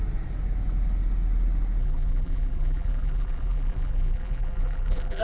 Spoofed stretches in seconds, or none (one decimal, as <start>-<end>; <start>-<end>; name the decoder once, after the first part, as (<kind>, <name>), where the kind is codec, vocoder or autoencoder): 1.8-5.2 (vocoder, BigVGAN v2)